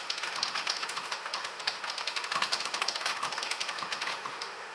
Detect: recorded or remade remade